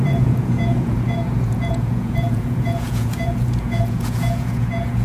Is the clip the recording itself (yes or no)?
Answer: no